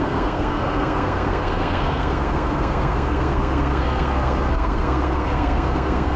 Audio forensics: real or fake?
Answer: fake